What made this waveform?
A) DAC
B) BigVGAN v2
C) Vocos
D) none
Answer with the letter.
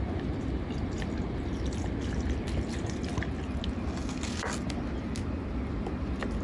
D